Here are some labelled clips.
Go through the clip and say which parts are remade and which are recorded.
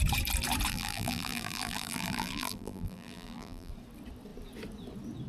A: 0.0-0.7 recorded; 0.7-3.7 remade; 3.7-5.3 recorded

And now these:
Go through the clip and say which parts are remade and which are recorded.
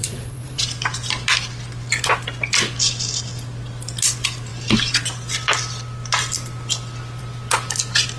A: 0.0-0.6 remade; 0.6-8.2 recorded